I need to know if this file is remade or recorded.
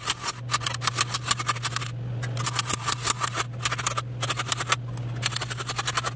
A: recorded